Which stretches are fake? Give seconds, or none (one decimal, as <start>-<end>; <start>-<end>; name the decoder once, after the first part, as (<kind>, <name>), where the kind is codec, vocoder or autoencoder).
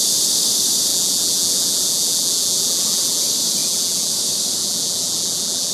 0.9-3.2 (vocoder, BigVGAN v2); 3.6-4.1; 4.6-5.7